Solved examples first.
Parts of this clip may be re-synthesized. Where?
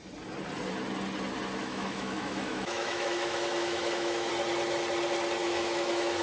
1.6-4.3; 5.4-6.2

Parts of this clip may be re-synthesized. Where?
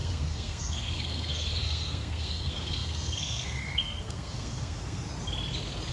0.0-5.1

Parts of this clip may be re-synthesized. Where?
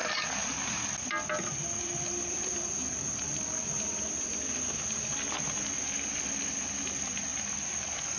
none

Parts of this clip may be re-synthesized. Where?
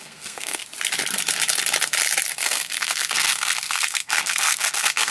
0.0-0.6; 2.3-5.1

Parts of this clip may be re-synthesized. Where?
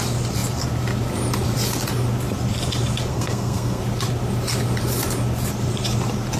3.1-3.8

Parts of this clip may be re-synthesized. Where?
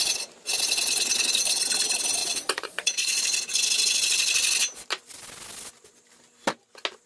2.2-3.2